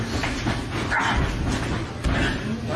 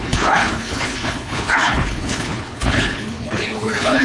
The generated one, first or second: second